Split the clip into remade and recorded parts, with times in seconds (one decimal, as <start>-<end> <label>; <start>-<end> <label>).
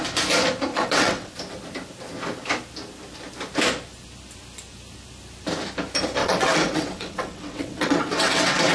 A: 0.0-0.7 recorded; 0.7-1.3 remade; 1.3-6.2 recorded; 6.2-8.7 remade